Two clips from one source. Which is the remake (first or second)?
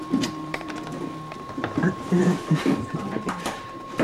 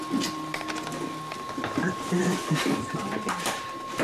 first